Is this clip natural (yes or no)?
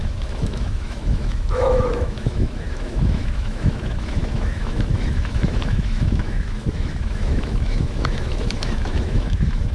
no